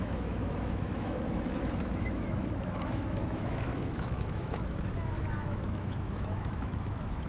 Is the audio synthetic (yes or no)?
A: yes